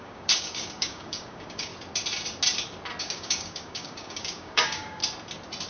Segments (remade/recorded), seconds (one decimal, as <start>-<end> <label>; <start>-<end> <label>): 0.0-1.7 remade; 1.7-3.0 recorded; 3.0-5.0 remade; 5.0-5.7 recorded